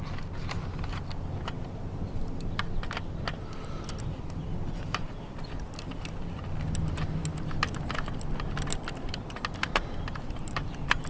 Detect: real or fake real